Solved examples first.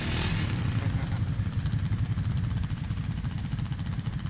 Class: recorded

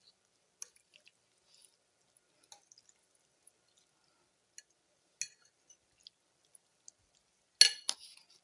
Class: recorded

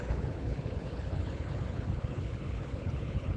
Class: remade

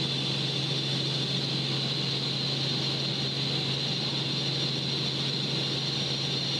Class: recorded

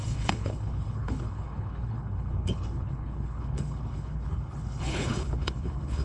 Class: remade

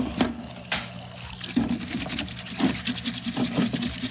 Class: recorded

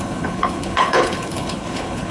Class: remade